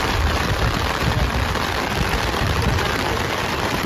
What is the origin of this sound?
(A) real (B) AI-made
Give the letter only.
B